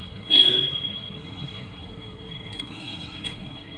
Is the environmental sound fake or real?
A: fake